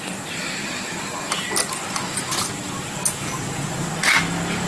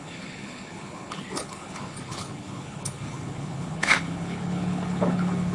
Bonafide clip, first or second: first